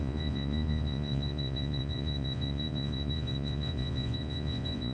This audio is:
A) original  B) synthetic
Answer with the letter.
B